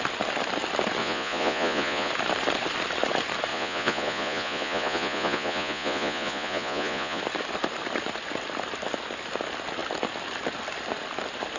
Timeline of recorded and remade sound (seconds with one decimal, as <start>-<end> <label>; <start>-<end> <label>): 0.0-1.0 recorded; 1.0-2.1 remade; 2.1-3.5 recorded; 3.5-7.2 remade; 7.2-11.6 recorded